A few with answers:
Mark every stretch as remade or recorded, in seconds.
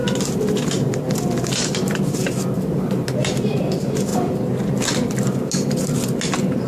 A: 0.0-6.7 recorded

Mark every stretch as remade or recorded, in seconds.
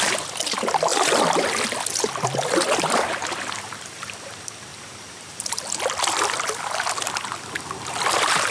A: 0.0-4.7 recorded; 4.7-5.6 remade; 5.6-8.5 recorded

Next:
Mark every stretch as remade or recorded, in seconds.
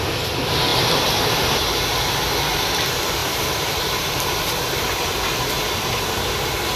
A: 0.0-3.2 recorded; 3.2-4.5 remade; 4.5-6.8 recorded